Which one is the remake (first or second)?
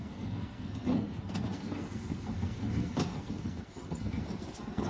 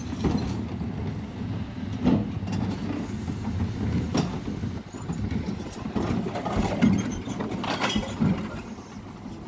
first